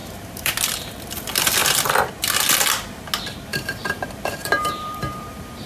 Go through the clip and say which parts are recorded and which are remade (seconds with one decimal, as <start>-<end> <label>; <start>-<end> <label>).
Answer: 0.0-0.5 remade; 0.5-3.5 recorded; 3.5-5.7 remade